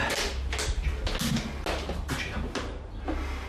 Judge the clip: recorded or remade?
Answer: recorded